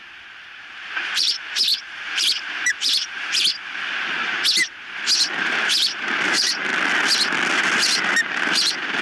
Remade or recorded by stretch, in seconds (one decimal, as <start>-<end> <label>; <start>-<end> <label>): 0.0-3.5 remade; 3.5-5.4 recorded; 5.4-6.7 remade; 6.7-8.3 recorded; 8.3-9.0 remade